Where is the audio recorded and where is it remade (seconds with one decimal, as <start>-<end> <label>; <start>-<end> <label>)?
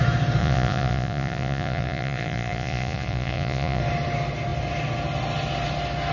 0.0-0.4 recorded; 0.4-3.8 remade; 3.8-6.1 recorded